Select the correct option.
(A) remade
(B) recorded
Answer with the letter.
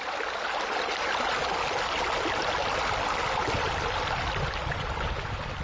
B